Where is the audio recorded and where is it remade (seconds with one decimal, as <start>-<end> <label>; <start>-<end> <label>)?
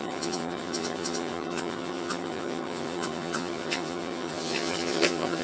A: 0.0-5.4 remade